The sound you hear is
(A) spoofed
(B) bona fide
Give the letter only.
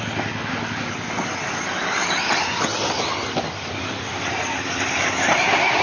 B